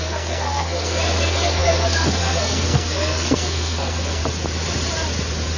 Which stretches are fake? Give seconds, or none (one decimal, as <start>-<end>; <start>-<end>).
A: 0.0-4.2